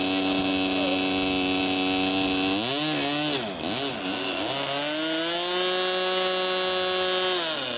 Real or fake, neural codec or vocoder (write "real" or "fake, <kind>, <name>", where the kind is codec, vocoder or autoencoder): real